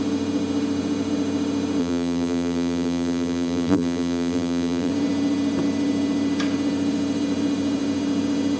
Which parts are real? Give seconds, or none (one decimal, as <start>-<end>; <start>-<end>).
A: 0.0-1.8; 4.9-8.6